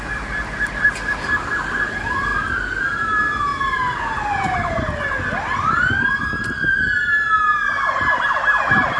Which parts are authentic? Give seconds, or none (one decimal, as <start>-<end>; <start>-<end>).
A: 0.0-9.0